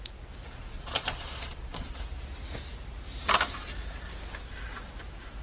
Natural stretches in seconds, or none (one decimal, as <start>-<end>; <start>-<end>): 0.0-0.6; 2.0-5.4